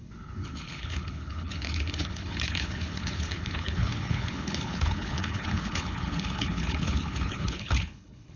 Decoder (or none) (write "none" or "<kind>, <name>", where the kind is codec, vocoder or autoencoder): codec, HILCodec